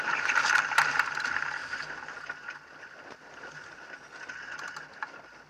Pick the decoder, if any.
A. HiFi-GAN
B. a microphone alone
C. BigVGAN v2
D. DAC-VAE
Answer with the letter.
B